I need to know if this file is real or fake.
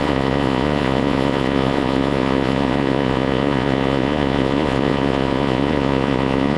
fake